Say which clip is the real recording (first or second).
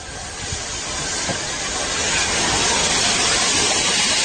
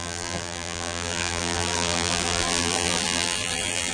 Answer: first